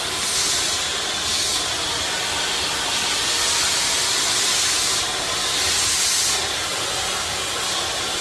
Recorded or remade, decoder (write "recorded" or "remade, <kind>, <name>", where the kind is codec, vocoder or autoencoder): recorded